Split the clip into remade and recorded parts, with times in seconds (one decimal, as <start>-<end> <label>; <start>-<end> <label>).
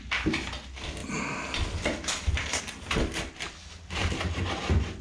0.0-1.0 recorded; 1.0-2.6 remade; 2.6-4.0 recorded; 4.0-4.6 remade; 4.6-5.0 recorded